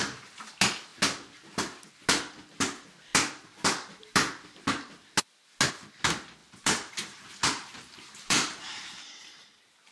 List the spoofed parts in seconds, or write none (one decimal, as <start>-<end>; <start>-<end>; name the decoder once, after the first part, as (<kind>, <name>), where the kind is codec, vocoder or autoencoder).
6.4-9.9 (vocoder, BigVGAN v2)